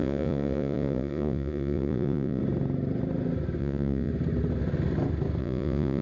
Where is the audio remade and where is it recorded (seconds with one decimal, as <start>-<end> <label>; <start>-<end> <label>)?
0.0-2.4 remade; 2.4-3.6 recorded; 3.6-4.1 remade; 4.1-5.4 recorded; 5.4-6.0 remade